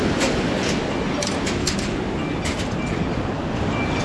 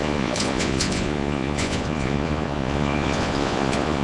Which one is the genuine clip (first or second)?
first